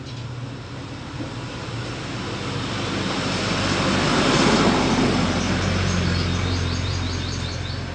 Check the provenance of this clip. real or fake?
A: real